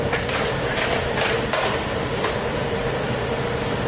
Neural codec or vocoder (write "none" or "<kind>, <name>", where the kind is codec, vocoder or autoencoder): none